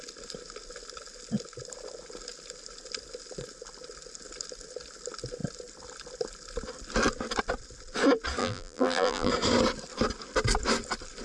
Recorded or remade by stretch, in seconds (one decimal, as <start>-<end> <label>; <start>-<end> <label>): 0.0-8.4 recorded; 8.4-9.3 remade; 9.3-11.2 recorded